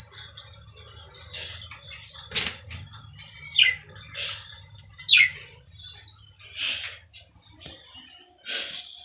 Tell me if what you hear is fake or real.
real